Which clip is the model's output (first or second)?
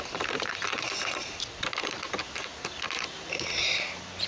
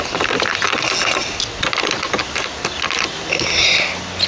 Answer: first